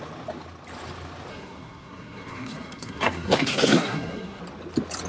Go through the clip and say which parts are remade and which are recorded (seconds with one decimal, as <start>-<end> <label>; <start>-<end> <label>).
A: 0.0-1.3 recorded; 1.3-4.4 remade; 4.4-5.1 recorded

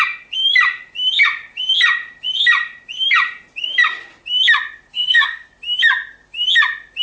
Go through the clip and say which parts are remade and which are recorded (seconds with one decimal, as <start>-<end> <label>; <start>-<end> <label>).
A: 0.0-4.9 recorded; 4.9-5.5 remade; 5.5-7.0 recorded

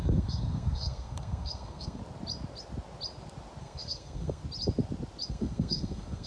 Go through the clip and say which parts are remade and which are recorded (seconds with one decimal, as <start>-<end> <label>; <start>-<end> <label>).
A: 0.0-2.0 remade; 2.0-3.6 recorded; 3.6-4.4 remade; 4.4-5.3 recorded; 5.3-6.3 remade

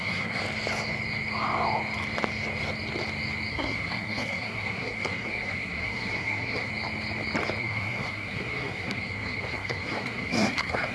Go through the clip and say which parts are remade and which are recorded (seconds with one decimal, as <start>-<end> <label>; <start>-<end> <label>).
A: 0.0-0.4 remade; 0.4-3.5 recorded; 3.5-6.7 remade; 6.7-7.6 recorded; 7.6-10.9 remade